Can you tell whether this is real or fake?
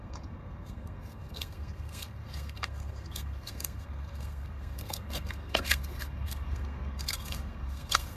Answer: fake